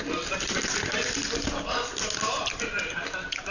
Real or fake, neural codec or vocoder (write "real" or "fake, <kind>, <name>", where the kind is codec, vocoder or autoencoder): real